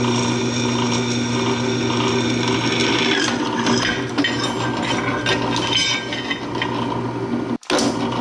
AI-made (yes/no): no